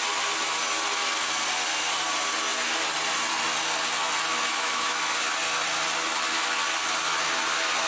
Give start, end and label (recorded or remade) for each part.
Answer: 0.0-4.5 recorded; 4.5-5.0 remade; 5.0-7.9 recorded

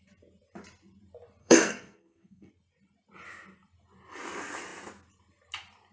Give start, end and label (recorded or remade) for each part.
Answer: 0.0-1.4 recorded; 1.4-2.5 remade; 2.5-5.9 recorded

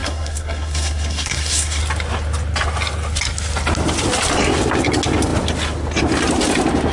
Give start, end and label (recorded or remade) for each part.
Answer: 0.0-1.8 remade; 1.8-6.9 recorded

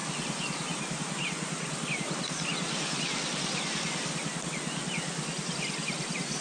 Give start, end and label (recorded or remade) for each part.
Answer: 0.0-6.4 recorded

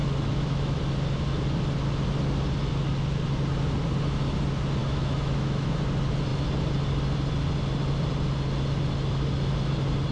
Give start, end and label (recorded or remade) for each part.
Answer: 0.0-0.8 remade; 0.8-4.8 recorded; 4.8-5.8 remade; 5.8-10.1 recorded

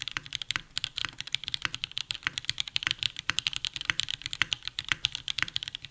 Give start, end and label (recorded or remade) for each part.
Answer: 0.0-5.9 remade

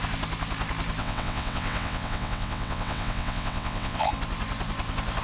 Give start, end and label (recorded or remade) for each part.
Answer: 0.0-1.0 recorded; 1.0-4.1 remade; 4.1-5.2 recorded

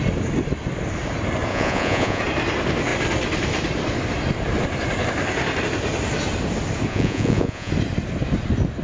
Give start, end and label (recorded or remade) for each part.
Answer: 0.0-1.5 recorded; 1.5-2.2 remade; 2.2-6.9 recorded; 6.9-7.7 remade; 7.7-8.8 recorded